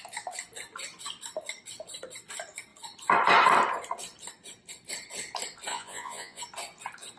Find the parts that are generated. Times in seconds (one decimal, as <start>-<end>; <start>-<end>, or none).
5.7-6.4